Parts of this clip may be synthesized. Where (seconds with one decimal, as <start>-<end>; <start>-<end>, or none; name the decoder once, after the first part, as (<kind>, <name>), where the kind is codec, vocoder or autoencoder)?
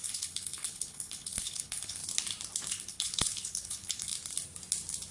0.0-2.0 (codec, HILCodec); 2.7-4.1